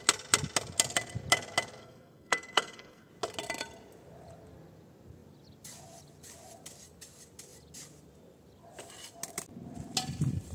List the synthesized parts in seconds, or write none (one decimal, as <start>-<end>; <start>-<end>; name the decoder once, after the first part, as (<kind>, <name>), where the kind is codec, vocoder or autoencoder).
1.8-3.1 (codec, SNAC)